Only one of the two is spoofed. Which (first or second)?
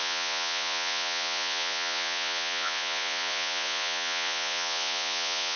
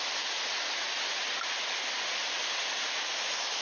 first